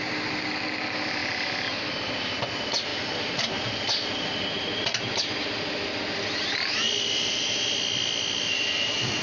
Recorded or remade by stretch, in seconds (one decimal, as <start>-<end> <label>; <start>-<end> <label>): 0.0-9.2 recorded